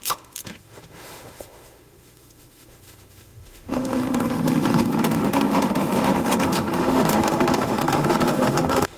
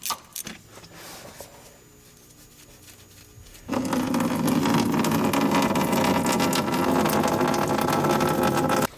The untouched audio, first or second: second